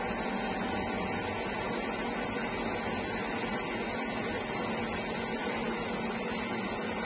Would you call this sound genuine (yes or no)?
yes